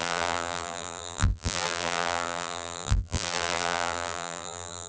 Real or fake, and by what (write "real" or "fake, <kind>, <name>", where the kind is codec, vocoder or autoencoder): fake, vocoder, BigVGAN v2